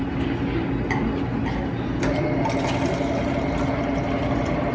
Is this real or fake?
real